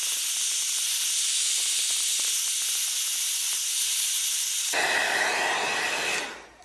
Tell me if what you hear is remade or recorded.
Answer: recorded